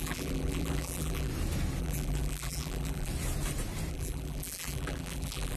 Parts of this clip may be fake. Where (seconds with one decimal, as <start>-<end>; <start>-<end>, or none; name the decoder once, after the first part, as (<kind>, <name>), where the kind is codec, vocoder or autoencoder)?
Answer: 0.0-1.3 (vocoder, BigVGAN v2); 1.8-3.1; 3.9-5.6